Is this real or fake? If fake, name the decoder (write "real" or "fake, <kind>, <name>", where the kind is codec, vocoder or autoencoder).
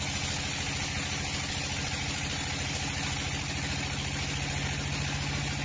real